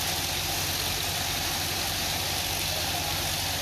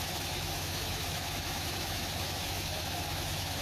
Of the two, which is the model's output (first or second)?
second